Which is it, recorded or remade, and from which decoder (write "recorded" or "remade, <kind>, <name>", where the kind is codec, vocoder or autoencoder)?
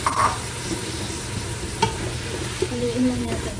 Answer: remade, vocoder, BigVGAN v2